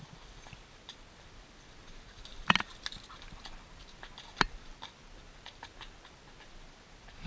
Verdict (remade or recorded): recorded